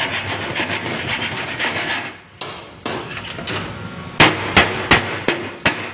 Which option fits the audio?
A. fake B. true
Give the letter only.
B